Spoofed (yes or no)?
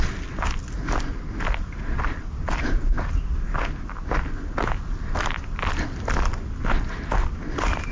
no